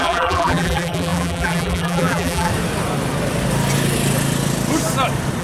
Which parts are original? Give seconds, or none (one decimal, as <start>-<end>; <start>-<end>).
2.5-5.4

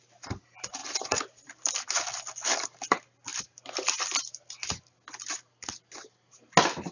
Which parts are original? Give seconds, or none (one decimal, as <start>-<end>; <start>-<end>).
0.0-0.8; 1.7-6.9

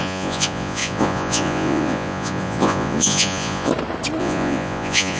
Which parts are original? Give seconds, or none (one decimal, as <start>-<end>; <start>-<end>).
3.7-4.2

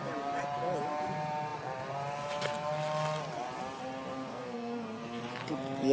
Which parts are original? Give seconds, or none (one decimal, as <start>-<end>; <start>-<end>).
0.0-4.3; 5.2-5.9

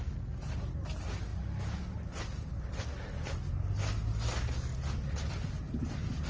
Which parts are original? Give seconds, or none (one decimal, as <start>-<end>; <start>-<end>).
0.0-6.3

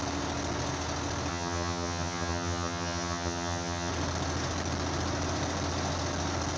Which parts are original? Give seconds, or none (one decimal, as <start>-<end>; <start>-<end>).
0.0-1.3; 3.9-6.6